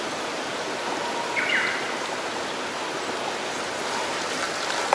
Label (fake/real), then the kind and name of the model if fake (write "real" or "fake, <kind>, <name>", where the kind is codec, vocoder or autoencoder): real